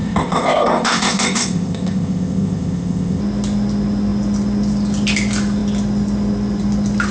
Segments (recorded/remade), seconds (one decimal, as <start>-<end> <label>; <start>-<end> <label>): 0.0-3.2 remade; 3.2-7.1 recorded

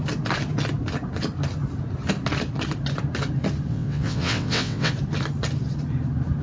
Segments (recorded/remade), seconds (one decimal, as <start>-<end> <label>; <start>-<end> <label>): 0.0-3.7 recorded; 3.7-4.9 remade; 4.9-6.4 recorded

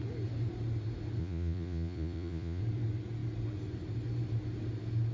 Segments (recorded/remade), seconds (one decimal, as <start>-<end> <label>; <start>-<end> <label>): 0.0-1.2 recorded; 1.2-2.6 remade; 2.6-5.1 recorded

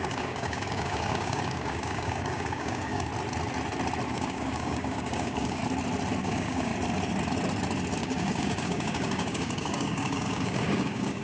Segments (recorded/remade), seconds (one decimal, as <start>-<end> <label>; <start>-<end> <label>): 0.0-3.1 remade; 3.1-4.1 recorded; 4.1-5.6 remade; 5.6-6.2 recorded; 6.2-6.7 remade; 6.7-8.0 recorded; 8.0-11.2 remade

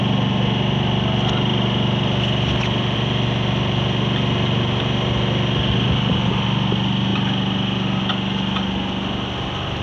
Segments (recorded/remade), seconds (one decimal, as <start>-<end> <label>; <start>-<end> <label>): 0.0-9.8 recorded

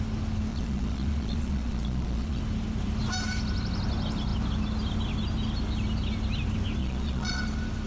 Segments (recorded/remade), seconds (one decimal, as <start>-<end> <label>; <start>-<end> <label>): 0.0-0.5 recorded; 0.5-2.4 remade; 2.4-6.8 recorded; 6.8-7.4 remade; 7.4-7.9 recorded